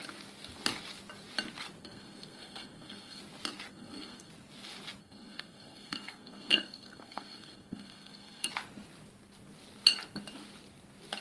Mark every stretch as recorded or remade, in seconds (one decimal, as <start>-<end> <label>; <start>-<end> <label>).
0.0-1.8 recorded; 1.8-3.2 remade; 3.2-3.7 recorded; 3.7-4.3 remade; 4.3-5.0 recorded; 5.0-8.5 remade; 8.5-11.2 recorded